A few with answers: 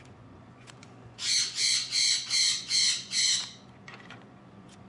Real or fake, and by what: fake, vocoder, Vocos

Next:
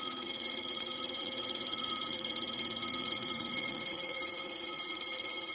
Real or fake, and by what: fake, vocoder, Vocos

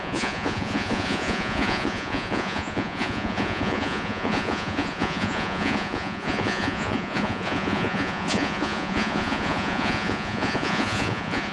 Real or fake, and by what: fake, vocoder, Vocos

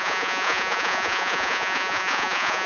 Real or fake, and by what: fake, vocoder, Vocos